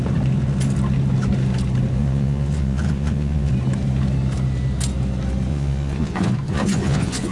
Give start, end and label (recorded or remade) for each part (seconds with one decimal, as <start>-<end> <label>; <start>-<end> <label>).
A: 0.0-2.0 recorded; 2.0-3.5 remade; 3.5-5.5 recorded; 5.5-7.3 remade